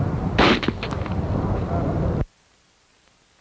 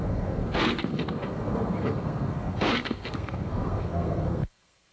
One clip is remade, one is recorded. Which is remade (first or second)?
second